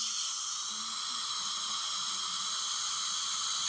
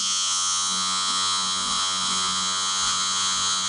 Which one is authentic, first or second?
first